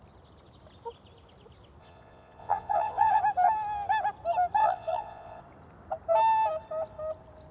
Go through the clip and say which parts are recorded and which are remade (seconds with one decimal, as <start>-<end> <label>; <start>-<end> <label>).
0.0-1.8 recorded; 1.8-3.2 remade; 3.2-4.6 recorded; 4.6-5.4 remade; 5.4-7.5 recorded